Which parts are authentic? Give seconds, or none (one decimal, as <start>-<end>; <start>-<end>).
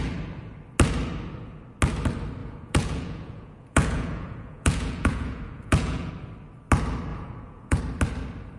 0.0-2.4; 6.1-7.1; 7.8-8.6